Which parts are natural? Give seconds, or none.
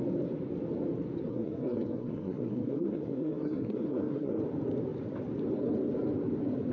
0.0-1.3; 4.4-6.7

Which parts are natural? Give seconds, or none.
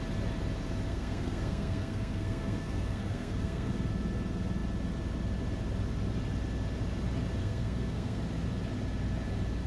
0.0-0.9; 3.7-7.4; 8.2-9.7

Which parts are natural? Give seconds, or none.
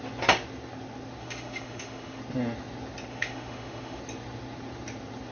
0.0-1.2; 2.2-3.1; 4.0-5.3